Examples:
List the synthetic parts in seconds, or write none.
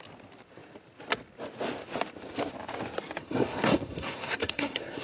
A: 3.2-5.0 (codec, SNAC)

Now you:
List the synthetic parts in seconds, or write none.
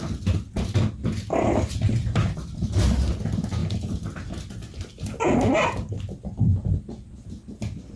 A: none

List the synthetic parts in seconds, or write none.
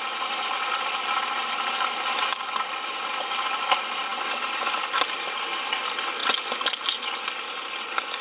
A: none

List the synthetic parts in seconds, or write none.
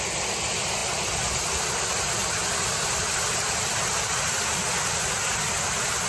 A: none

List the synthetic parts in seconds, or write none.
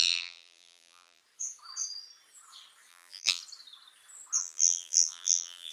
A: 0.0-1.2 (vocoder, BigVGAN v2); 2.9-3.4; 4.4-5.7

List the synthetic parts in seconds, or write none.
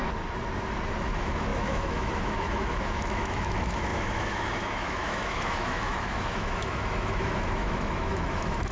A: 1.0-8.7 (autoencoder, DAC-VAE)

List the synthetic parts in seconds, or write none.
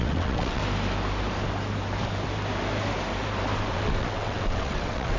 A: 0.0-0.6 (vocoder, WaveNeXt); 3.7-5.2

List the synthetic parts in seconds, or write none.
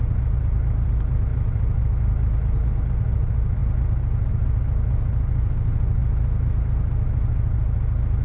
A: none